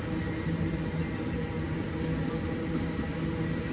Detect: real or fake real